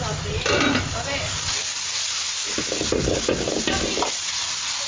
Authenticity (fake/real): real